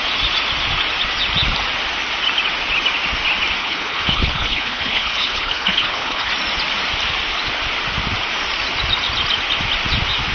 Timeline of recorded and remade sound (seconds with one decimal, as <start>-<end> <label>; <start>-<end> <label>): 0.0-3.6 recorded; 3.6-6.3 remade; 6.3-10.3 recorded